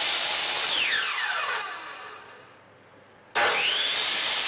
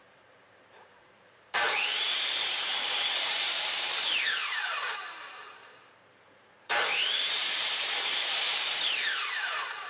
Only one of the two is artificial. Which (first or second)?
second